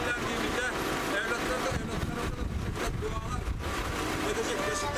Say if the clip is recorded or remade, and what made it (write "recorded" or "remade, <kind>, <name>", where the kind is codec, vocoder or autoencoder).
recorded